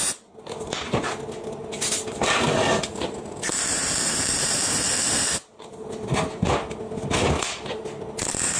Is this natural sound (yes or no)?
yes